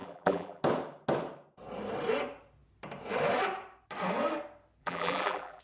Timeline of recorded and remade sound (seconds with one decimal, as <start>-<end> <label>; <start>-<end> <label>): 0.0-0.6 remade; 0.6-4.8 recorded; 4.8-5.6 remade